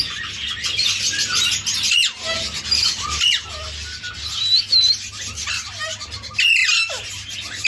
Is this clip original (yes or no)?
yes